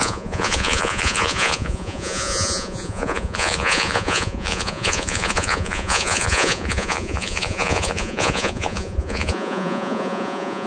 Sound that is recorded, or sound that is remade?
remade